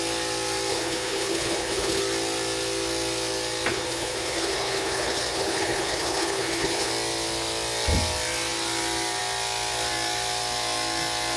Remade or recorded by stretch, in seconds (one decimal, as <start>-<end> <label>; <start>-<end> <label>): 0.0-0.7 recorded; 0.7-2.0 remade; 2.0-3.7 recorded; 3.7-6.9 remade; 6.9-11.4 recorded